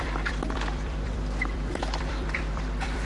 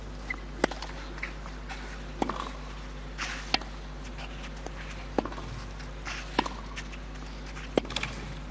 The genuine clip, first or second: second